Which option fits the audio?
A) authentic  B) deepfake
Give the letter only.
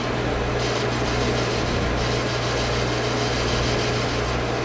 A